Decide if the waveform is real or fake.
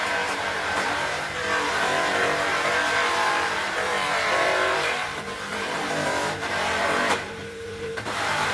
fake